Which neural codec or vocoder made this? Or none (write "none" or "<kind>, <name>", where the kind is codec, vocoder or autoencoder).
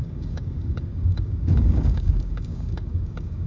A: codec, DAC